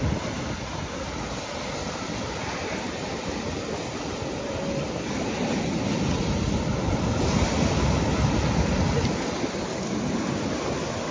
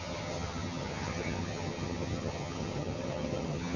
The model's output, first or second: second